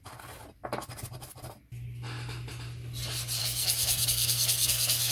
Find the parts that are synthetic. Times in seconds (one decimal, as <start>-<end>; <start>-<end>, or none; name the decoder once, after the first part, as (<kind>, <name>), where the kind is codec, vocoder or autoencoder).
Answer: 3.4-5.1 (codec, SNAC)